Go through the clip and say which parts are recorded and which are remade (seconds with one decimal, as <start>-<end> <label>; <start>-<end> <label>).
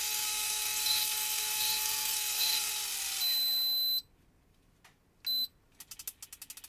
0.0-2.7 remade; 2.7-6.7 recorded